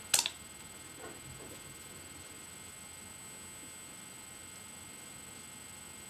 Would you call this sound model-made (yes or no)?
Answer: no